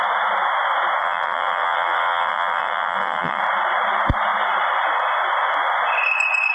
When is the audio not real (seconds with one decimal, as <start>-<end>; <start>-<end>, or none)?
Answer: 1.0-3.4